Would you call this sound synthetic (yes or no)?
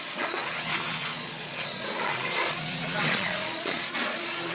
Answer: yes